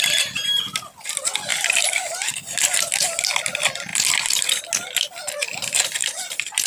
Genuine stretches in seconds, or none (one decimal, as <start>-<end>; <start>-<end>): 0.0-1.5; 2.5-3.9; 4.6-6.0

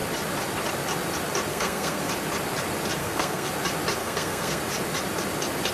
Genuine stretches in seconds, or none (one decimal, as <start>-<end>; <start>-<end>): 0.0-1.5; 2.1-3.0; 3.5-4.0; 4.6-5.7

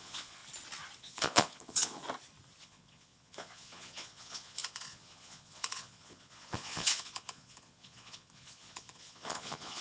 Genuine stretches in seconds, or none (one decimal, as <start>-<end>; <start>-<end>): 0.4-1.0; 2.0-2.6

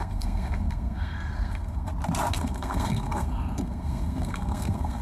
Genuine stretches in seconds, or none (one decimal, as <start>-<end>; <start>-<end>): 1.9-2.4

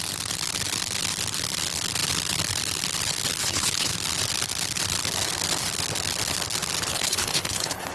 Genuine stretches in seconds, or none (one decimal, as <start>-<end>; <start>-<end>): 0.0-3.4; 3.9-6.9

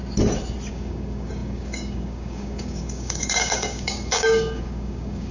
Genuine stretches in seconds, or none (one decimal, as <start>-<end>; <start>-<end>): 0.0-0.7